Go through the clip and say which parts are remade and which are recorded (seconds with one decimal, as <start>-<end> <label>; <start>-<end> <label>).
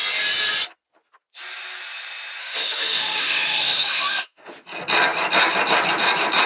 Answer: 0.0-2.4 recorded; 2.4-4.5 remade; 4.5-6.5 recorded